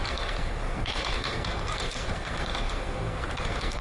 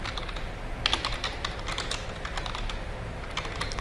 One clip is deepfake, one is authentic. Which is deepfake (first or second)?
first